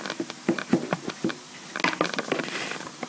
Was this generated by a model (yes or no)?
no